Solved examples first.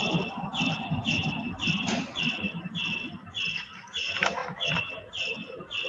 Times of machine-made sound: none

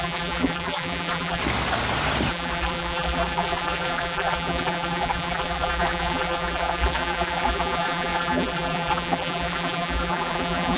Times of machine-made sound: 0.0-1.4 (vocoder, BigVGAN v2); 2.3-10.8

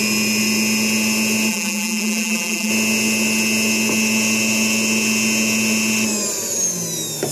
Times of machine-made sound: 1.5-2.7 (vocoder, BigVGAN v2)

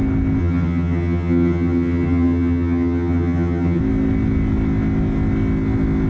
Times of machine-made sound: 0.4-3.8 (vocoder, HiFi-GAN)

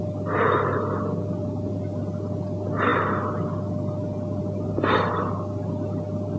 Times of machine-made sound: none

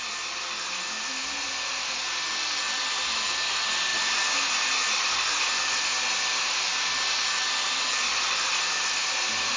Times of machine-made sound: none

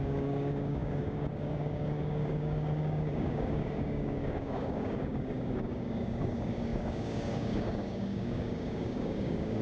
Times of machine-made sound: 0.0-9.6 (codec, DAC)

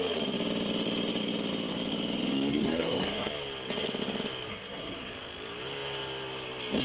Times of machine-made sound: 2.5-3.3 (codec, SNAC); 4.5-5.1